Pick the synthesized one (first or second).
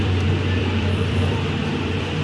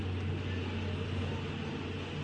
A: first